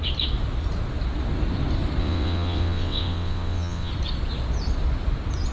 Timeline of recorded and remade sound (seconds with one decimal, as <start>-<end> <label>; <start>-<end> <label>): 0.0-2.0 recorded; 2.0-3.9 remade; 3.9-5.5 recorded

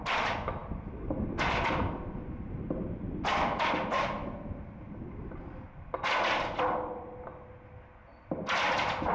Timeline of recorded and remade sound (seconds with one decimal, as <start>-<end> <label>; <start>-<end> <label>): 0.0-9.1 recorded